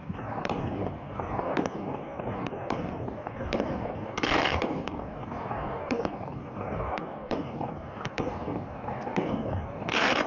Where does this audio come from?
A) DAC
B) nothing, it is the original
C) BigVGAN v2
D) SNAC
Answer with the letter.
A